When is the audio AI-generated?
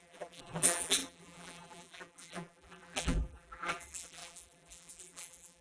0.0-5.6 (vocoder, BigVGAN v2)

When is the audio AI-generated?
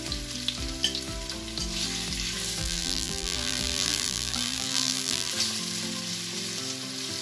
2.6-5.3 (vocoder, BigVGAN v2)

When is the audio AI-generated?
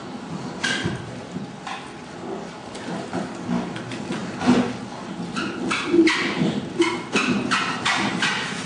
none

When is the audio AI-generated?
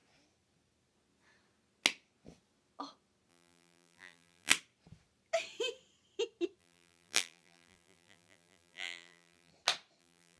3.3-4.5 (vocoder, BigVGAN v2); 6.6-9.5; 10.0-10.4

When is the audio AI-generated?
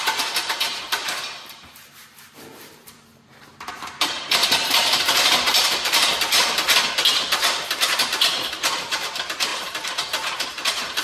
0.0-6.1 (vocoder, BigVGAN v2); 7.1-11.0